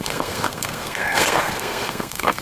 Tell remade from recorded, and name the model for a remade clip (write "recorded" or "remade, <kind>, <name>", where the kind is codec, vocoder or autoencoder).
remade, codec, SNAC